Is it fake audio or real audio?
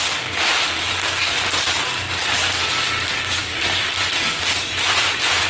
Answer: real